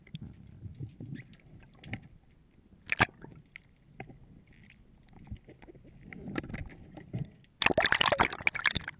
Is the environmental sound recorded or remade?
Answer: recorded